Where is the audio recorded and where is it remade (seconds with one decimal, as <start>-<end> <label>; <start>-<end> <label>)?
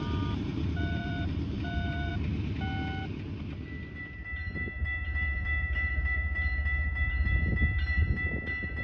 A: 0.0-2.1 remade; 2.1-4.0 recorded; 4.0-8.8 remade